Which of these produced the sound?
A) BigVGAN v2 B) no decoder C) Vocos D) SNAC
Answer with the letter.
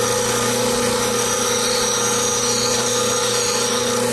B